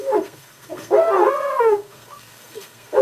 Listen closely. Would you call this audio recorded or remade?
remade